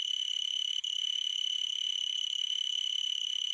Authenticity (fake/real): fake